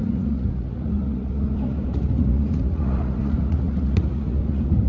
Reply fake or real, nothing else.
fake